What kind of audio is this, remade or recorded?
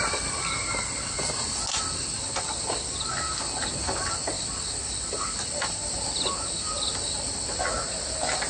recorded